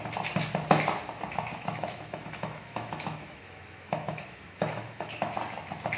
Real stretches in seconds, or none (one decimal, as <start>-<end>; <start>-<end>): 0.0-1.5; 5.1-6.0